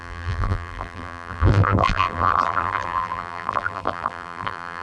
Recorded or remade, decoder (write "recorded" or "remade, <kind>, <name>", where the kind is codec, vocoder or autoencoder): remade, vocoder, BigVGAN v2